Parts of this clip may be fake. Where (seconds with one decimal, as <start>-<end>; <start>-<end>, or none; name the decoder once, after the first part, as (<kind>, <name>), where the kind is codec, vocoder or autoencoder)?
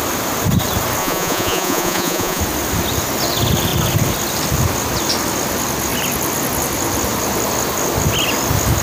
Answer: 1.0-2.4 (vocoder, Vocos)